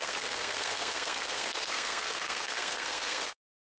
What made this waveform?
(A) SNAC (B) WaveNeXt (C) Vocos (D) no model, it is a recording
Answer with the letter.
A